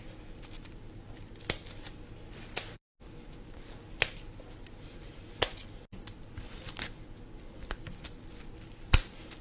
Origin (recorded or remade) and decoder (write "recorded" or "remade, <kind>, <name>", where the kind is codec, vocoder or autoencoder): recorded